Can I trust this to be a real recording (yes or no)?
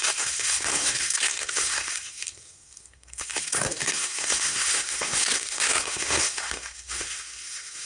no